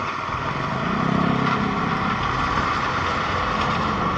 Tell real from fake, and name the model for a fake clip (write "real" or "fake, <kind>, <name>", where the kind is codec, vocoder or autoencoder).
real